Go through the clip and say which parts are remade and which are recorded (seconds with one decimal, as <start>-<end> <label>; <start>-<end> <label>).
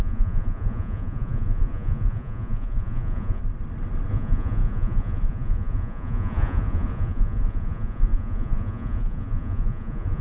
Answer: 0.0-3.4 remade; 3.4-4.1 recorded; 4.1-10.2 remade